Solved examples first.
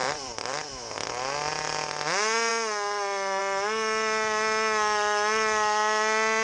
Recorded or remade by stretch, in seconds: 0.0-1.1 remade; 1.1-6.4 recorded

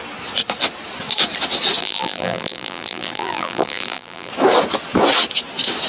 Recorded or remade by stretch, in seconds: 0.0-1.8 recorded; 1.8-4.3 remade; 4.3-5.9 recorded